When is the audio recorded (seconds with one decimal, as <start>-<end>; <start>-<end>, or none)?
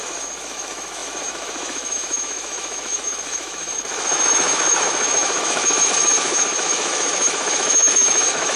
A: none